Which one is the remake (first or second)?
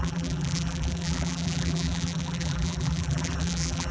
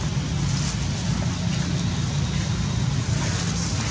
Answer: first